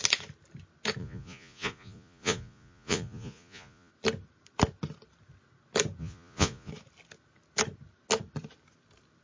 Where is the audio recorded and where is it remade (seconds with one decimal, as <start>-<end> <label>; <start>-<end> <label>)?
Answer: 0.0-1.0 recorded; 1.0-3.9 remade; 3.9-6.0 recorded; 6.0-6.7 remade; 6.7-9.2 recorded